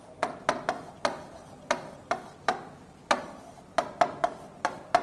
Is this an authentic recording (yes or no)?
yes